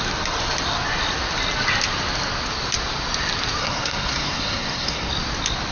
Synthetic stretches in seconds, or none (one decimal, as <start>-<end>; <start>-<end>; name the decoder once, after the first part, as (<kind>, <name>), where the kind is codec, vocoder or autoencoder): 3.6-5.1 (codec, SNAC)